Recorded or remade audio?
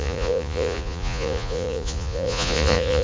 remade